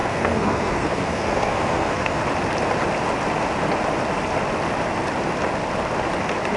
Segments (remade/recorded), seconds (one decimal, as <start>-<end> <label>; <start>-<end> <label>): 0.0-2.2 remade; 2.2-6.6 recorded